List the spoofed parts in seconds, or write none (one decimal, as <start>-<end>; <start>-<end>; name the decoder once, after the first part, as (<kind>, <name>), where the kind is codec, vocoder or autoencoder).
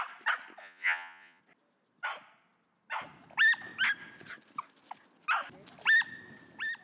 0.6-1.4 (vocoder, Vocos)